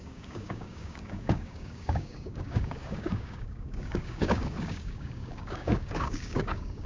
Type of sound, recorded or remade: remade